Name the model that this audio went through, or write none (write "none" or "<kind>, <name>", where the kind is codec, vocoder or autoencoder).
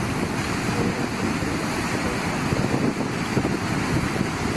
none